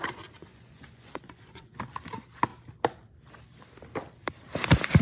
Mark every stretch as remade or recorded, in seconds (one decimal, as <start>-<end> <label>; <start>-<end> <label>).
0.0-0.4 recorded; 0.4-1.8 remade; 1.8-5.0 recorded